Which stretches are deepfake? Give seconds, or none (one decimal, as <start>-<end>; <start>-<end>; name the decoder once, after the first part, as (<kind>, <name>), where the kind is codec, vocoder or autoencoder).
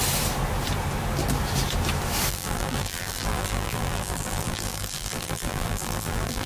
2.3-6.5 (vocoder, BigVGAN v2)